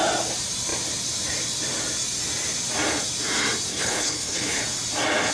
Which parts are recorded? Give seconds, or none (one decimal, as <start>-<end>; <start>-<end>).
0.0-3.7; 4.6-5.3